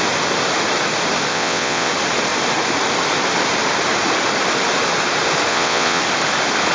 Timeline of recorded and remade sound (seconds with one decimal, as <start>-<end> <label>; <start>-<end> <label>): 0.0-1.3 recorded; 1.3-1.9 remade; 1.9-5.5 recorded; 5.5-6.0 remade; 6.0-6.7 recorded